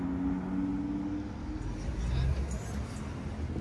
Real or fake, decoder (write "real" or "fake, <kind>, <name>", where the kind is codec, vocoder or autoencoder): real